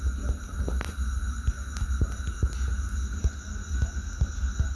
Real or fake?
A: real